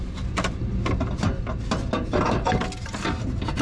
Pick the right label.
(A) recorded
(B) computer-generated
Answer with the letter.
A